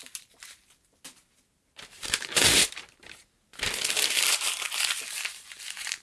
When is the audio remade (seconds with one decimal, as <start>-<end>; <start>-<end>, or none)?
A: 0.0-3.5; 5.3-6.0